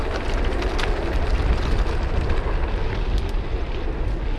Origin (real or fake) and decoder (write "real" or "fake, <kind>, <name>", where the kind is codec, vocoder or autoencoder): real